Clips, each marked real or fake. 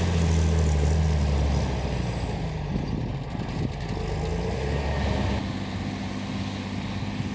real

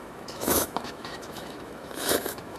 fake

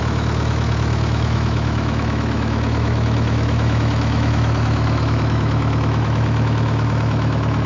fake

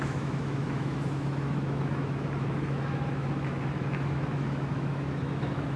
fake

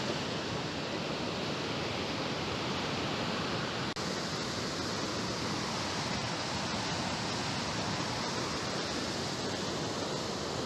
real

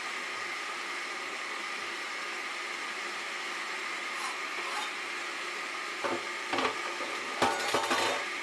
real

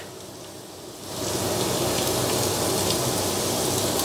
real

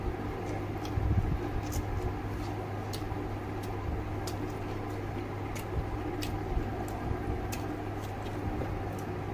real